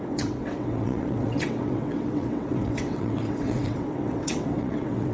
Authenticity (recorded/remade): remade